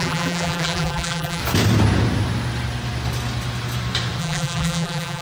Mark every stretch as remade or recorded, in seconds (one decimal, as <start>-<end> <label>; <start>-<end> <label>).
0.0-1.4 remade; 1.4-4.2 recorded; 4.2-5.2 remade